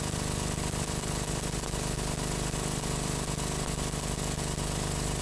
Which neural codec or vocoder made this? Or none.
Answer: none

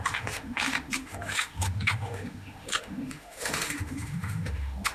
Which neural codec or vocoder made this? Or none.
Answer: autoencoder, DAC-VAE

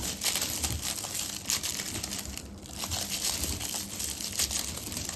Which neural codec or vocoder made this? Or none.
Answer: none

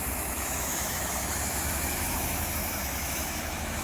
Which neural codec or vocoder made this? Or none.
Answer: autoencoder, DAC-VAE